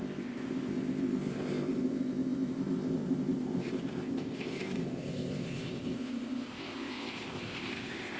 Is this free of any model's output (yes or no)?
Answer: no